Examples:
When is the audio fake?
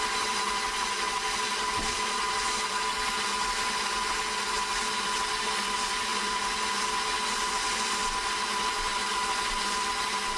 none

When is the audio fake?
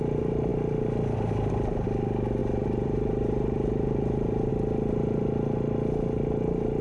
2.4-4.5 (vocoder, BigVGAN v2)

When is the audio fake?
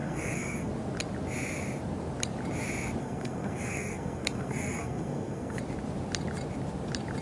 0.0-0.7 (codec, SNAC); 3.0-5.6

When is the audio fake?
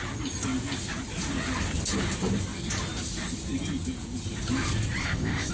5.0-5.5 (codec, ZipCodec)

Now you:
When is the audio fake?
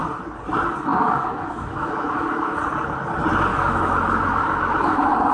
0.9-2.6 (autoencoder, DAC-VAE); 3.5-5.3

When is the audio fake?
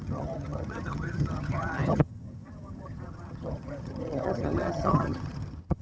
0.0-5.8 (vocoder, HiFi-GAN)